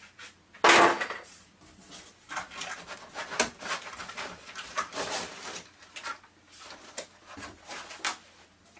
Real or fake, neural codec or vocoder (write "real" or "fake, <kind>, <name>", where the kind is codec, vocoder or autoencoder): real